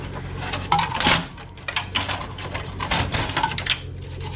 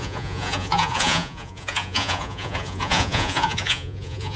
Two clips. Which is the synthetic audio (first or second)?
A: second